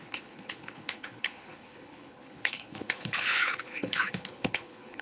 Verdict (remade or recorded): remade